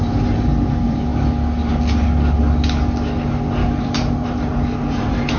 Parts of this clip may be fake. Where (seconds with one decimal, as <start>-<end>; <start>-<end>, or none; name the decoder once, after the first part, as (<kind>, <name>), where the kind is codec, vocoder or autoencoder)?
0.0-1.1 (vocoder, BigVGAN v2); 3.8-5.4